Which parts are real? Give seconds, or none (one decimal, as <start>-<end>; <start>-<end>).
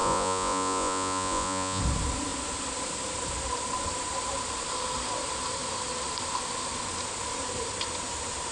1.8-8.5